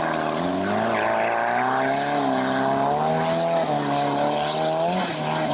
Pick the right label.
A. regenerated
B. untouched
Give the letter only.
B